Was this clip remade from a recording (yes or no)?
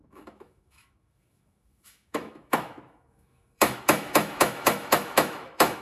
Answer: yes